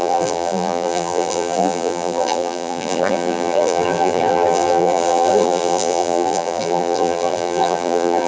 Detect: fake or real fake